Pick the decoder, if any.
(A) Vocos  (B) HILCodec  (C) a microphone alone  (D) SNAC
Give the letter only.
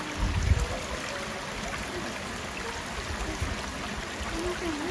C